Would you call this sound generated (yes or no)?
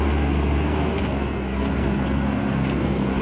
yes